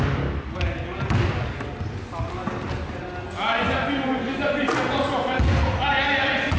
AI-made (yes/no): no